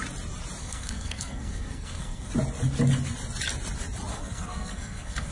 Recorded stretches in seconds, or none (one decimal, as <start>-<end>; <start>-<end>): 0.0-0.6; 2.3-4.1